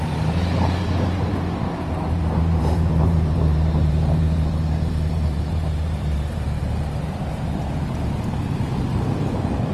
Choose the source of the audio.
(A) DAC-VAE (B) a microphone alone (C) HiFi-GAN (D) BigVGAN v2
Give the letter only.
D